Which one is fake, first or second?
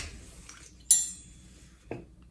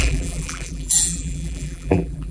second